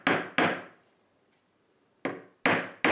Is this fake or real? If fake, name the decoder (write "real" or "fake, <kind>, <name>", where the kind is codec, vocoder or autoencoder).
real